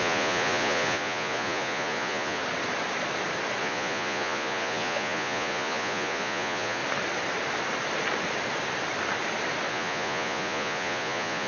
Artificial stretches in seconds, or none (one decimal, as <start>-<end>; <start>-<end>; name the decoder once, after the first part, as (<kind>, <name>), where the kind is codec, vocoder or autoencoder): 0.0-2.4 (vocoder, Vocos); 3.6-6.8; 9.7-11.5